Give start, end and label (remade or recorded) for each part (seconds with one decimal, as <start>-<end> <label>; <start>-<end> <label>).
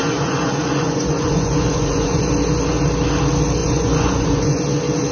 0.0-2.2 remade; 2.2-3.6 recorded; 3.6-4.6 remade; 4.6-5.1 recorded